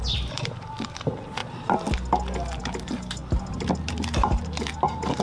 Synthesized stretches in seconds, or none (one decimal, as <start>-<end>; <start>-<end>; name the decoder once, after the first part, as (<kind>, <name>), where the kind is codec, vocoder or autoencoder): 0.0-1.4 (vocoder, BigVGAN v2); 2.6-3.2; 3.9-5.2